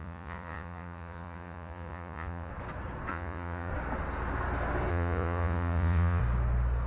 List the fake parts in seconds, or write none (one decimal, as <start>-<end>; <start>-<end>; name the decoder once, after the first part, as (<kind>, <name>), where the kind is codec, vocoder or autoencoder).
0.0-2.5 (vocoder, Vocos); 3.1-3.7; 4.9-6.2